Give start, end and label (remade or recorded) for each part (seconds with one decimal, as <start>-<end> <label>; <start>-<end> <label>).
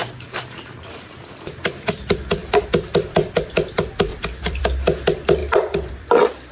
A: 0.0-4.1 recorded; 4.1-4.6 remade; 4.6-5.4 recorded; 5.4-6.5 remade